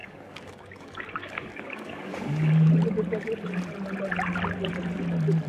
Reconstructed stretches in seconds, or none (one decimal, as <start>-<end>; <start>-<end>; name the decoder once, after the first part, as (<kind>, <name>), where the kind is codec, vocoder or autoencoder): 0.0-2.7 (codec, DAC)